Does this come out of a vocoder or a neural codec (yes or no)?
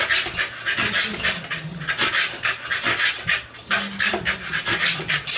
no